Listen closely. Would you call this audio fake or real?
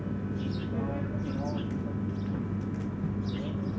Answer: real